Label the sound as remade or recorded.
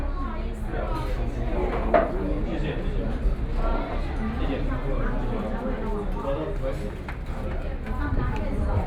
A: recorded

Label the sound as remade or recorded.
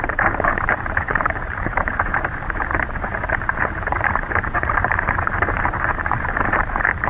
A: remade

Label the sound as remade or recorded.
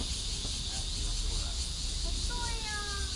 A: recorded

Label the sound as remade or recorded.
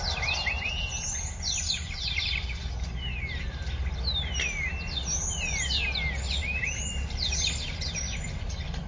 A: recorded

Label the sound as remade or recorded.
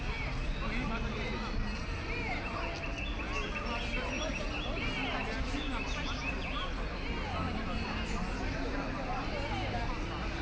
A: recorded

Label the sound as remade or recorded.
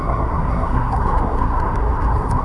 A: remade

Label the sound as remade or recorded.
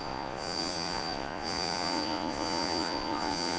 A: remade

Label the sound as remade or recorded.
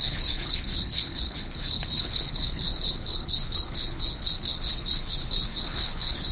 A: remade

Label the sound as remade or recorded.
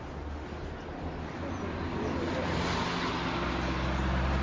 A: recorded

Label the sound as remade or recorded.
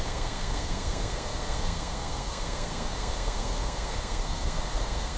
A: remade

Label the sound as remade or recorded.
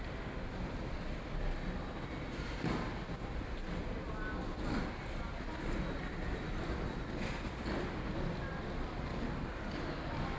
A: recorded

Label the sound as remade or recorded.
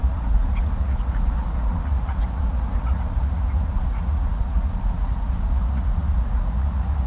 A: remade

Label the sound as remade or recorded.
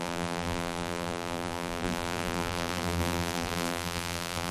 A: remade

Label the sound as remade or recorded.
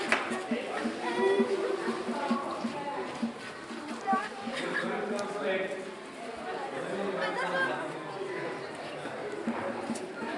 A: recorded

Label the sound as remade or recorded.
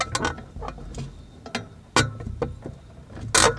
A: recorded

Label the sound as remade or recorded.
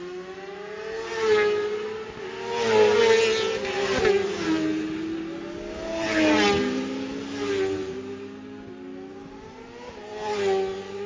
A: recorded